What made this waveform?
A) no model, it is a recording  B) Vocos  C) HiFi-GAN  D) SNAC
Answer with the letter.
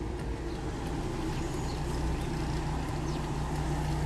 A